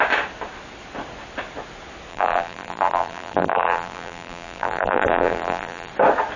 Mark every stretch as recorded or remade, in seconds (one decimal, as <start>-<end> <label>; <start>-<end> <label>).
0.0-2.1 recorded; 2.1-5.9 remade; 5.9-6.4 recorded